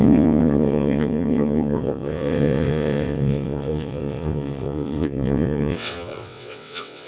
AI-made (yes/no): yes